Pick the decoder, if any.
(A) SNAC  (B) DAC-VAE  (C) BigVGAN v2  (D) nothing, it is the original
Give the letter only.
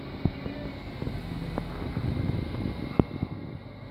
D